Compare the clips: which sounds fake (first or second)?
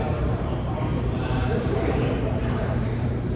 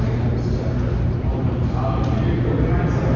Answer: first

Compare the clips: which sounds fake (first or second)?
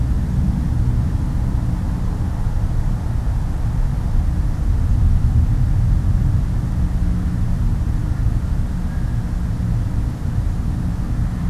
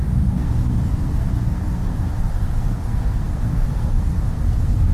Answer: second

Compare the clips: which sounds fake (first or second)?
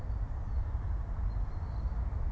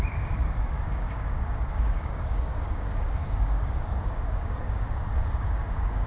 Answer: second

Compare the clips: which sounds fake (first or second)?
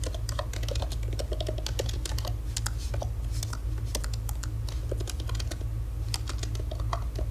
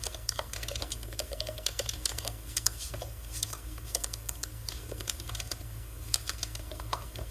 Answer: second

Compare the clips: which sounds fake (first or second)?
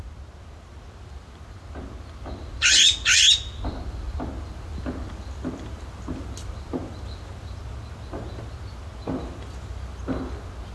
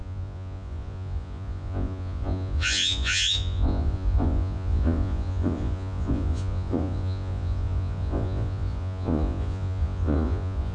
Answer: second